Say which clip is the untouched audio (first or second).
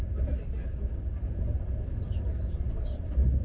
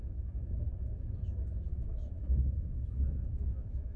first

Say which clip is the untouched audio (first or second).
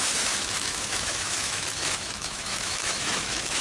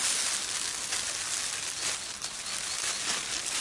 second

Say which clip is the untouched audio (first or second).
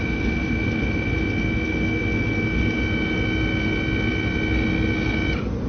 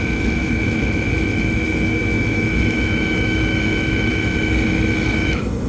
first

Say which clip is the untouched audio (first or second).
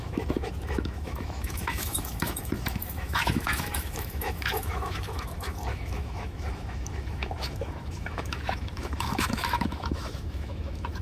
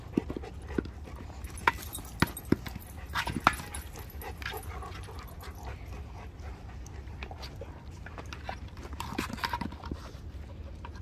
second